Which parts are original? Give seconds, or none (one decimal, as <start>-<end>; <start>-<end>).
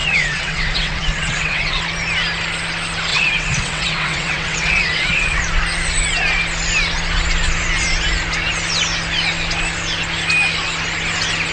1.8-3.1; 5.4-11.5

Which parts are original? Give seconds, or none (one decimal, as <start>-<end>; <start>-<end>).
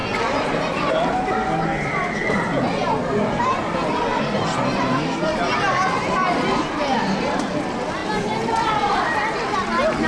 0.0-10.1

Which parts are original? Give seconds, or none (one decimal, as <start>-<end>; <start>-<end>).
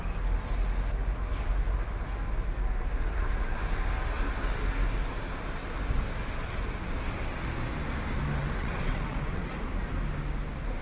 0.0-8.4; 9.5-10.8